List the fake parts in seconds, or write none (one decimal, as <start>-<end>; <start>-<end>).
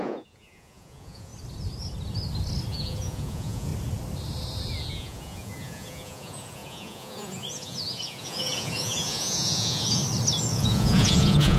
0.0-1.3; 2.7-3.7; 4.9-10.0; 10.5-11.6